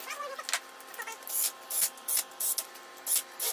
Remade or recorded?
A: recorded